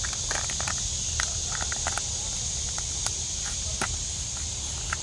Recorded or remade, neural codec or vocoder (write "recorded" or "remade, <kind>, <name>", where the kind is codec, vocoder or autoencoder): recorded